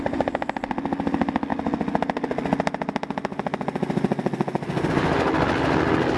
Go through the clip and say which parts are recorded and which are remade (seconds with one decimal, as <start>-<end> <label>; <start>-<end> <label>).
0.0-6.2 recorded